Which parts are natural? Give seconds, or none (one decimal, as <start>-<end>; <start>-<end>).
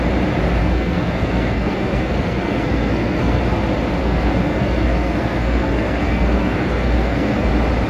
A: 0.0-0.6; 3.4-4.0; 7.5-7.9